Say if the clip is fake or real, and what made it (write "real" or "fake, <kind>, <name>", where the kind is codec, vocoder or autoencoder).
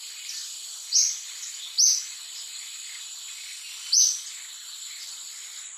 real